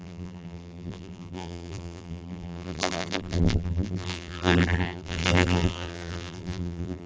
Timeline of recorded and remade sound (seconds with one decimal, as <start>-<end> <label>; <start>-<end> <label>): 0.0-7.1 remade